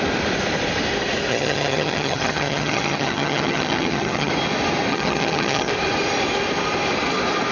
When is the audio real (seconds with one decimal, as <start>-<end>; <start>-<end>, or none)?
0.0-1.3; 4.3-4.9; 5.7-7.5

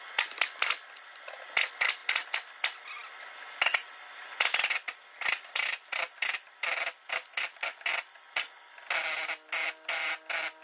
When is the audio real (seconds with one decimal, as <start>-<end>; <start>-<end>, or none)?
0.0-10.6

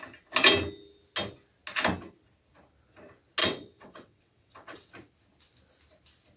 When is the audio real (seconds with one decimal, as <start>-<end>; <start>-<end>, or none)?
0.0-3.4; 4.9-6.4

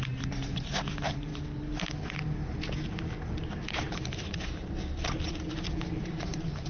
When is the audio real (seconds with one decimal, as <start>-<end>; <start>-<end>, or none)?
1.3-5.3

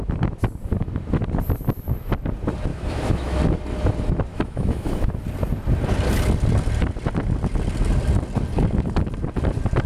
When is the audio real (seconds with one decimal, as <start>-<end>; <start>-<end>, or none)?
0.0-2.7; 3.4-4.3; 5.1-9.9

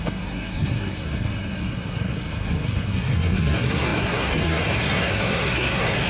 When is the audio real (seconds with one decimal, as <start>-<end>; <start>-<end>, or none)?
none

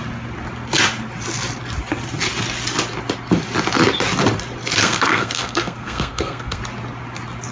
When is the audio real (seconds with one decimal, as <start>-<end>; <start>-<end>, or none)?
0.0-4.8; 6.6-7.5